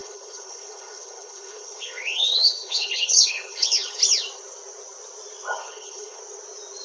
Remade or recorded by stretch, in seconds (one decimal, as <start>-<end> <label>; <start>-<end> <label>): 0.0-4.0 remade; 4.0-5.6 recorded; 5.6-6.2 remade; 6.2-6.8 recorded